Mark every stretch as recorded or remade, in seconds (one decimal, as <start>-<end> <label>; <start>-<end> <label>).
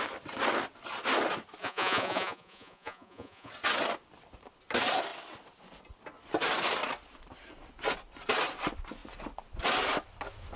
0.0-1.6 recorded; 1.6-3.5 remade; 3.5-10.6 recorded